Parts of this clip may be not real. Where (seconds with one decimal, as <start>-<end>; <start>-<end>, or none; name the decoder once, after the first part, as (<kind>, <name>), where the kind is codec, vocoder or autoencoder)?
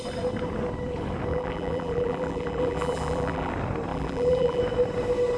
1.3-3.5 (vocoder, BigVGAN v2); 3.9-4.6